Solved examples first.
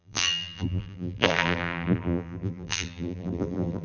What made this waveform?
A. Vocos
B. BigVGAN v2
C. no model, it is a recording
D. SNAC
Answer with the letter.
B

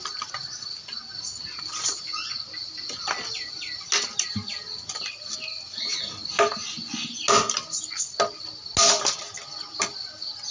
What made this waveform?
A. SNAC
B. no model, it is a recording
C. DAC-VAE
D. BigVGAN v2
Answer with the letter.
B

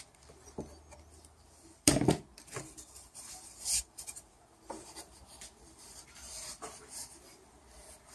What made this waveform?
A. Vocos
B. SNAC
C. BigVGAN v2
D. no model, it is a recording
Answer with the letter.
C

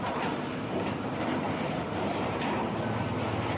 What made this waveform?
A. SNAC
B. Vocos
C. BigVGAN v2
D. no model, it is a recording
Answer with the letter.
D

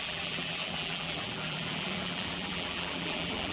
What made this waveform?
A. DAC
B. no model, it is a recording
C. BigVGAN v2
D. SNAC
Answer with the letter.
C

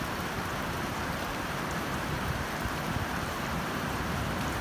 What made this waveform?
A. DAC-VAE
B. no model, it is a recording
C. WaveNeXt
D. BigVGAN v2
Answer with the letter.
D